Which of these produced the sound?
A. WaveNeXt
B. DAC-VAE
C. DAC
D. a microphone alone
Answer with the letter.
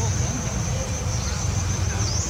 D